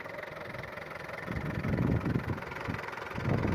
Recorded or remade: remade